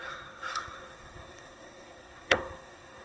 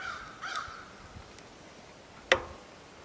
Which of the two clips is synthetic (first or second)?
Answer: first